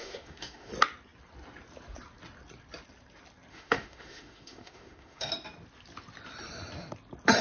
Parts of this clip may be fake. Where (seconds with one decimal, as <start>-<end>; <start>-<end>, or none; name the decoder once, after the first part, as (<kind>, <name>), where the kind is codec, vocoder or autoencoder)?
0.0-0.7 (autoencoder, DAC-VAE); 3.5-5.3